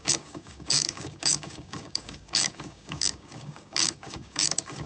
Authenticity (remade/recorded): remade